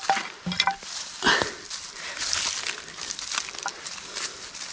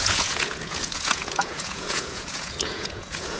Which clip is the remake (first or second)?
second